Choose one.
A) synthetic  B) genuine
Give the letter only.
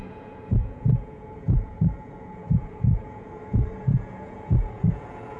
A